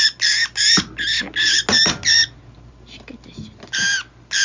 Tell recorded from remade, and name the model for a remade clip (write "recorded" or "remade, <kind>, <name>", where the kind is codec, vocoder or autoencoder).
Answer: recorded